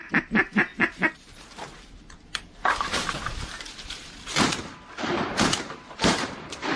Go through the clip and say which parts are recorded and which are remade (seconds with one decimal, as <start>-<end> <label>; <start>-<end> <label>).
0.0-6.8 remade